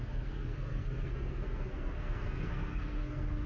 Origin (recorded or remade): remade